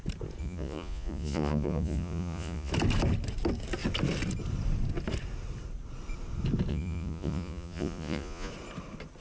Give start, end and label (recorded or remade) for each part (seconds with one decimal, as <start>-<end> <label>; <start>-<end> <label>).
0.0-0.4 recorded; 0.4-2.7 remade; 2.7-6.7 recorded; 6.7-8.5 remade; 8.5-9.2 recorded